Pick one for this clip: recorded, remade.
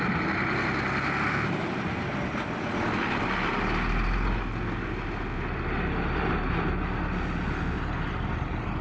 recorded